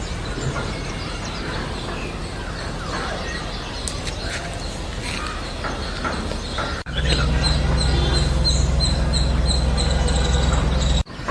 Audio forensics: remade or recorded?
recorded